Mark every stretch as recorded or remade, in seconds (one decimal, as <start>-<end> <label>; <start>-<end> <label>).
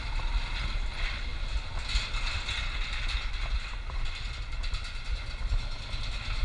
0.0-6.4 recorded